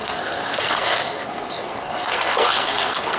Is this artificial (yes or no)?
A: yes